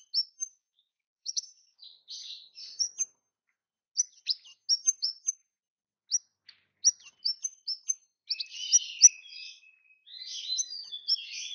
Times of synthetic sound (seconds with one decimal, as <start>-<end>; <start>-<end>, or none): 0.5-1.8

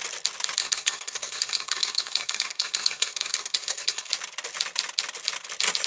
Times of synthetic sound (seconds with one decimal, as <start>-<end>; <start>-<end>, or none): 0.6-4.1

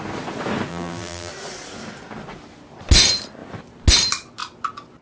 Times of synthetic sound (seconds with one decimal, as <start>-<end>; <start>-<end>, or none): 0.7-1.3